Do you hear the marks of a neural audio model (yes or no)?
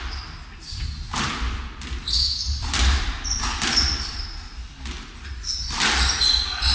no